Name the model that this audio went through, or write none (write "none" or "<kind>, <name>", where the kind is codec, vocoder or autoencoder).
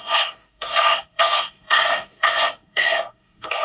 codec, SNAC